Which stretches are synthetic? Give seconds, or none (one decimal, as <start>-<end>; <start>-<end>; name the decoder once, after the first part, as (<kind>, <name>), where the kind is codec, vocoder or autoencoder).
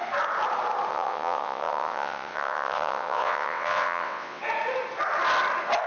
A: 0.9-4.4 (vocoder, WaveNeXt)